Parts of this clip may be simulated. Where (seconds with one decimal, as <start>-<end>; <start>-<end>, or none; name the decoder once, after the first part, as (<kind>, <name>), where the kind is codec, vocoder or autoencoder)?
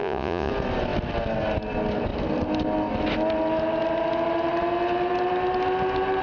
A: 0.0-0.5 (vocoder, Vocos)